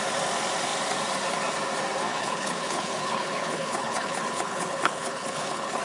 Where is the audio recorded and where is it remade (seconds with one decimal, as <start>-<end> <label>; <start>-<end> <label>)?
0.0-2.1 recorded; 2.1-5.8 remade